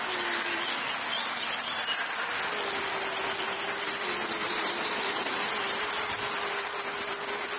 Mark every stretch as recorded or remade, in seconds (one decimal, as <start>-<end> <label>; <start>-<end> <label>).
0.0-4.4 recorded; 4.4-5.9 remade; 5.9-7.6 recorded